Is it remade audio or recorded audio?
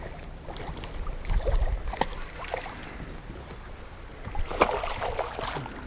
recorded